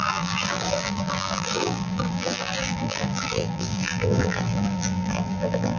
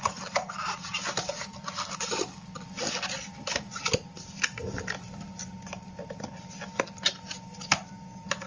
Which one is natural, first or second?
second